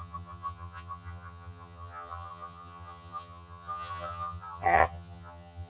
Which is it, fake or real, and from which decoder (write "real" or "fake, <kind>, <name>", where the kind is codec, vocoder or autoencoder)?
fake, vocoder, HiFi-GAN